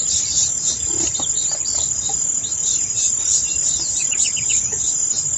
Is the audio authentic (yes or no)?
yes